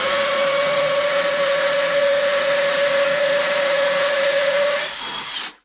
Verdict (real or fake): fake